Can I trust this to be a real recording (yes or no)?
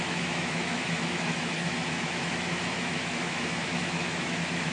no